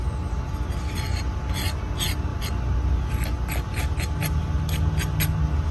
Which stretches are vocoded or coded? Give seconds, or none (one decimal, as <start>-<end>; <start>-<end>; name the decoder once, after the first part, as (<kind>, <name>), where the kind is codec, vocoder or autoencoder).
none